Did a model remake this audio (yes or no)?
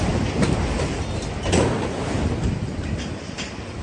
yes